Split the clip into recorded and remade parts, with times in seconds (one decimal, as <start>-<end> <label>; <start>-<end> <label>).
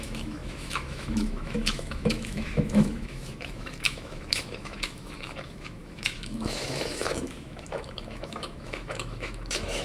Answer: 0.0-9.8 remade